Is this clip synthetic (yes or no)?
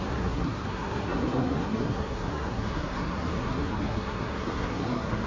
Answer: yes